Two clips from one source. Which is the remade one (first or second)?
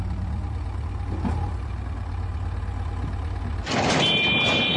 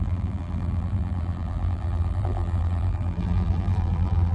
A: second